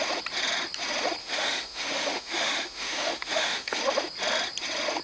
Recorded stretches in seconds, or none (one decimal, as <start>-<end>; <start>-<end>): 0.0-1.2; 3.8-5.0

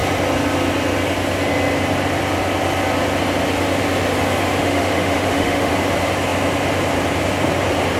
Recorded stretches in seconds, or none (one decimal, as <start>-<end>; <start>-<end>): 0.0-4.6; 5.7-8.0